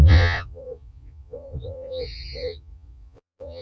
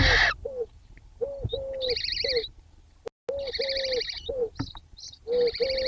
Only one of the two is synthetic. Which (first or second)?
first